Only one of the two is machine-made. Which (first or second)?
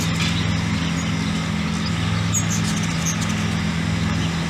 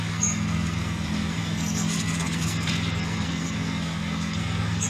second